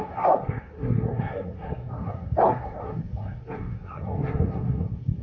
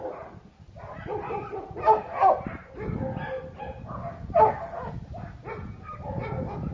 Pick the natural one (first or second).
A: second